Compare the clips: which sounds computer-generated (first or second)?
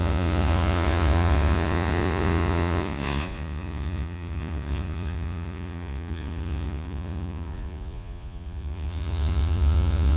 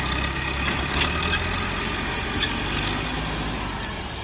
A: first